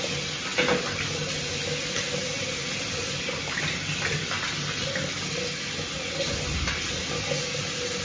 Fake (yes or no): no